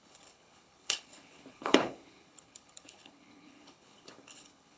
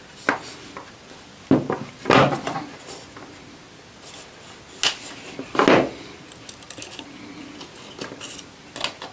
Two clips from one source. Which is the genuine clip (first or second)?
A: second